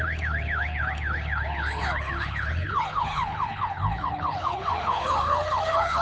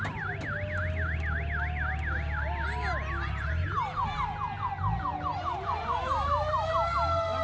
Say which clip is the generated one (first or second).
first